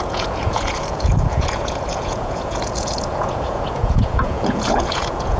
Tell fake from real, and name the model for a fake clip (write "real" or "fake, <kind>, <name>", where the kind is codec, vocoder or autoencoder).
fake, vocoder, Vocos